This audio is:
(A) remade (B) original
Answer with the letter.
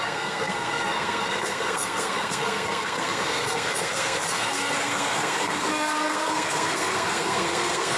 A